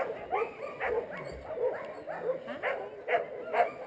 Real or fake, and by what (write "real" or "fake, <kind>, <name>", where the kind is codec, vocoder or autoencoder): real